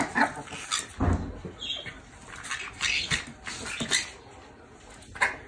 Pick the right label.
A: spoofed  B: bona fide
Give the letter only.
B